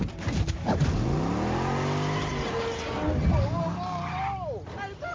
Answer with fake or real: real